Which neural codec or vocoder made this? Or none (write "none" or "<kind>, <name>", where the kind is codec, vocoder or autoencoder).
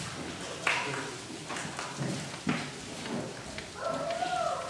none